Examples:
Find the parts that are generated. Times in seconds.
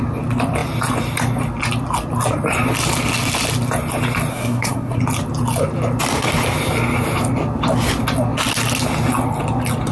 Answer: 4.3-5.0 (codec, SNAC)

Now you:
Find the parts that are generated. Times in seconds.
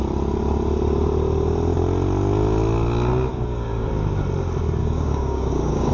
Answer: 3.3-3.9 (codec, DAC); 4.8-5.9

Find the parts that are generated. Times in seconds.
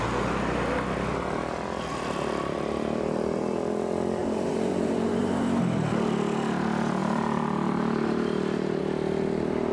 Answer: 4.2-5.6 (vocoder, BigVGAN v2); 7.0-8.8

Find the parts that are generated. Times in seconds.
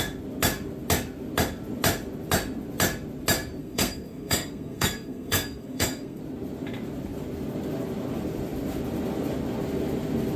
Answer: 3.6-6.2 (codec, SNAC)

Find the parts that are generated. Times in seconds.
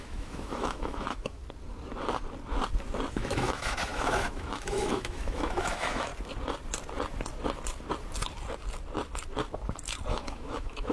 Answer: 0.0-1.4 (autoencoder, DAC-VAE); 3.1-6.1; 10.1-10.9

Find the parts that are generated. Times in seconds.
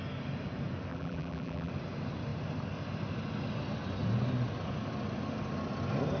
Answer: 0.9-1.7 (vocoder, BigVGAN v2)